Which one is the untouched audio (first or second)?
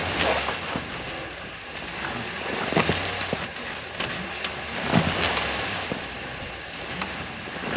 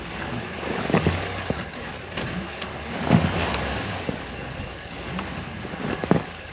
first